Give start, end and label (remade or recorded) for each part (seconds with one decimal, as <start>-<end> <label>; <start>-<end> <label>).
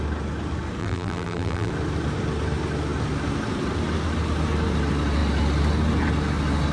0.0-0.8 recorded; 0.8-1.7 remade; 1.7-6.7 recorded